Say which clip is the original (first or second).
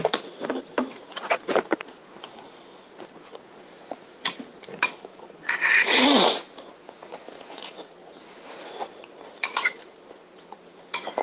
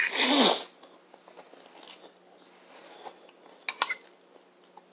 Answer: second